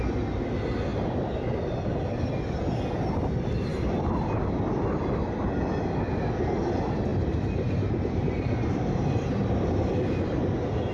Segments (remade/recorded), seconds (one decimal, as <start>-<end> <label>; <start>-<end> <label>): 0.0-7.1 recorded; 7.1-9.3 remade; 9.3-10.9 recorded